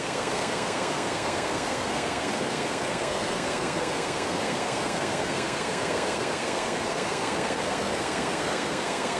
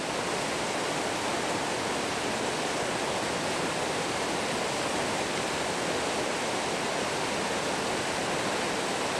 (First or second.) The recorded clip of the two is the second